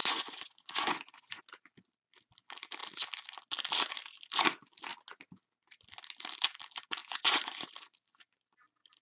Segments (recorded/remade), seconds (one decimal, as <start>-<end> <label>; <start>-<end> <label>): 0.0-1.4 remade; 1.4-7.0 recorded; 7.0-7.7 remade; 7.7-9.0 recorded